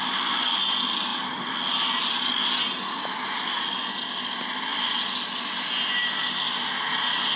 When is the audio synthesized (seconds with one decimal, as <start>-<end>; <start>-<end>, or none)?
none